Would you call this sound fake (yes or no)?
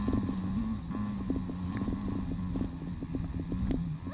no